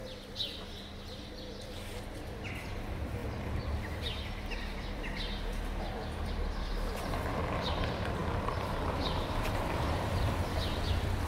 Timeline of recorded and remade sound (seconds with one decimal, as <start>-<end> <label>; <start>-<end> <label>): 0.0-2.7 recorded; 2.7-3.2 remade; 3.2-3.9 recorded; 3.9-11.3 remade

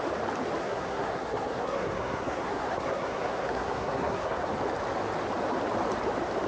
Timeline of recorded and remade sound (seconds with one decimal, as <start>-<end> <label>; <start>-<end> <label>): 0.0-0.6 recorded; 0.6-4.5 remade; 4.5-6.5 recorded

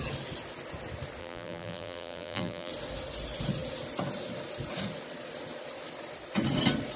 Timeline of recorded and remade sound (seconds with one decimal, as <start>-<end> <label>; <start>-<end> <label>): 0.0-1.2 recorded; 1.2-2.7 remade; 2.7-7.0 recorded

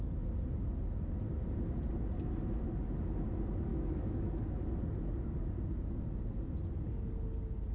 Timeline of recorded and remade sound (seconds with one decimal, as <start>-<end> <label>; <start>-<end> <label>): 0.0-3.7 recorded; 3.7-4.3 remade; 4.3-7.7 recorded

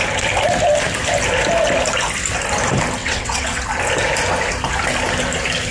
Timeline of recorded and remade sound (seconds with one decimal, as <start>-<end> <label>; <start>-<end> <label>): 0.0-3.0 recorded; 3.0-3.6 remade; 3.6-5.7 recorded